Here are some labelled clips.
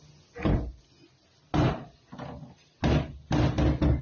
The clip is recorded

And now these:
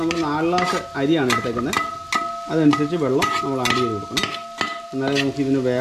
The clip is recorded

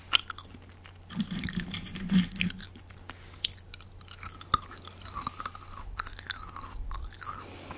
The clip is recorded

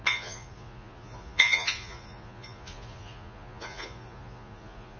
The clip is remade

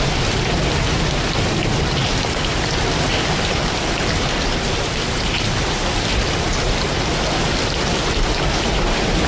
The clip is recorded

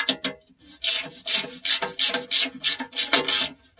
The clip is recorded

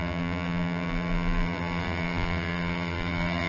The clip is remade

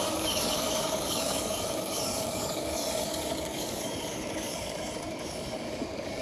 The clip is remade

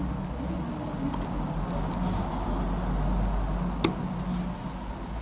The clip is recorded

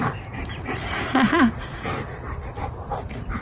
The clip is recorded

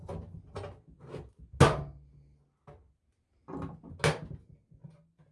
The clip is recorded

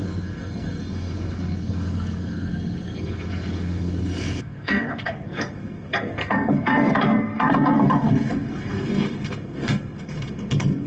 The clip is remade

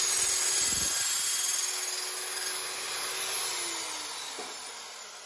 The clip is recorded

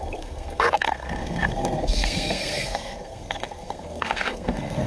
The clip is remade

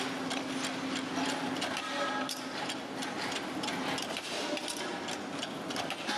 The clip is recorded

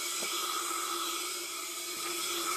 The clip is recorded